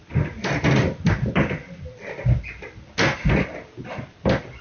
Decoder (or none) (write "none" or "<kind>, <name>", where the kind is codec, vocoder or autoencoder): none